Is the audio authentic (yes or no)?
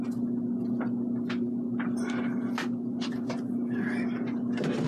yes